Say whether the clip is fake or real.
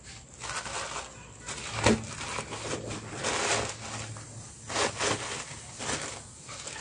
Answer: real